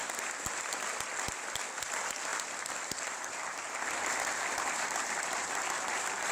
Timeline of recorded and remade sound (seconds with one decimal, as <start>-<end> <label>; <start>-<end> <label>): 0.0-0.7 remade; 0.7-2.3 recorded; 2.3-6.3 remade